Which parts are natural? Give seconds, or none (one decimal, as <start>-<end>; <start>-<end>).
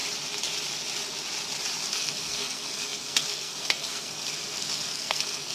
0.0-1.9